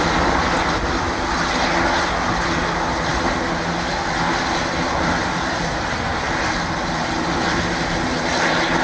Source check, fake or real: real